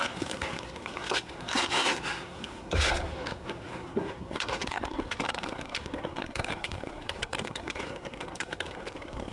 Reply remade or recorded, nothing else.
remade